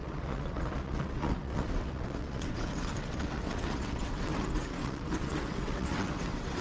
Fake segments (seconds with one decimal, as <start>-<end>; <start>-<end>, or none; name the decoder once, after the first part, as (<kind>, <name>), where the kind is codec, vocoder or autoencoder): 0.0-6.6 (vocoder, WaveNeXt)

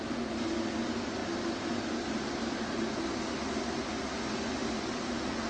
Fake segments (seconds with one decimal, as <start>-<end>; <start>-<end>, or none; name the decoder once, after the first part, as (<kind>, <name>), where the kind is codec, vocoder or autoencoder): none

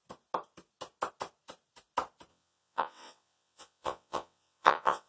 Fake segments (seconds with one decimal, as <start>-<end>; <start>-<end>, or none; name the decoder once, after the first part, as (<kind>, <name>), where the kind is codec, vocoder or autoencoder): 2.3-5.1 (vocoder, WaveNeXt)

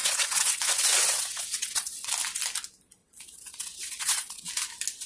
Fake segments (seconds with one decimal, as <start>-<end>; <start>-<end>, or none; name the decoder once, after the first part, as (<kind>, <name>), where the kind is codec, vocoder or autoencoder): 0.0-2.1 (vocoder, WaveNeXt); 3.0-4.5

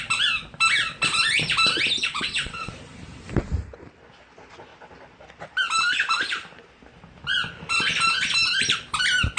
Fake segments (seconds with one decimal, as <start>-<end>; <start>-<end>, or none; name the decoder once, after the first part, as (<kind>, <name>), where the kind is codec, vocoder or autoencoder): 2.0-2.7 (vocoder, WaveNeXt)

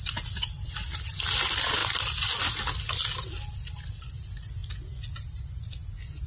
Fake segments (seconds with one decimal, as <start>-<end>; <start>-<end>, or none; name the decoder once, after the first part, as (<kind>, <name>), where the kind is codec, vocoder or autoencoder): none

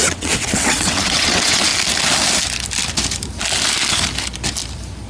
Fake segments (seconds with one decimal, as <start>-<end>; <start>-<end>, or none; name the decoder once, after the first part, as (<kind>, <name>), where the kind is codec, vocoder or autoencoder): 0.0-1.7 (vocoder, WaveNeXt)

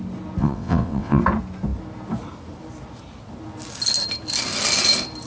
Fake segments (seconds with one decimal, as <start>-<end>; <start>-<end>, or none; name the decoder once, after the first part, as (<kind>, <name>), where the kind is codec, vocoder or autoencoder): 0.4-1.2 (vocoder, WaveNeXt)